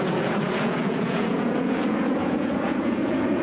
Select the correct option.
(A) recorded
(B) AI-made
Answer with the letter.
B